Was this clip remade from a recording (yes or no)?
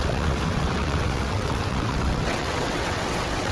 yes